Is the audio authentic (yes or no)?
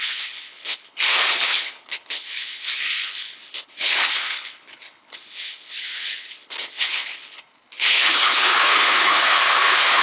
no